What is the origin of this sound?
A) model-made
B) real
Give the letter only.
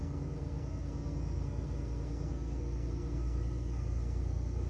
A